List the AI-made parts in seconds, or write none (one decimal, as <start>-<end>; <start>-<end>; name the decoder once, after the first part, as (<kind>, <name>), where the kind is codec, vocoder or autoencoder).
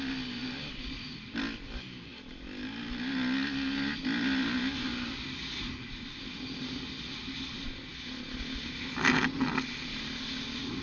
none